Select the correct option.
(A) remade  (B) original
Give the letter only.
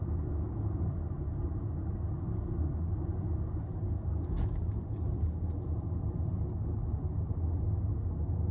B